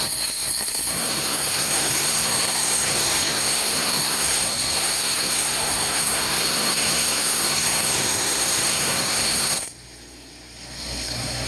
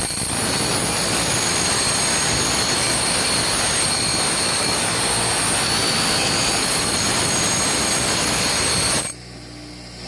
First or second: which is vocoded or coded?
first